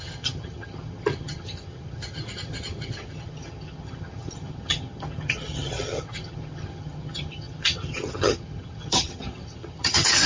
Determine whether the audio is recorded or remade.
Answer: remade